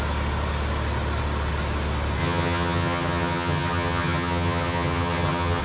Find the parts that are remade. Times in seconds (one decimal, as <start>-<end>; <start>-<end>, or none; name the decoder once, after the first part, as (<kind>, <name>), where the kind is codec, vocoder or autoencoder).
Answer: 2.2-5.6 (vocoder, HiFi-GAN)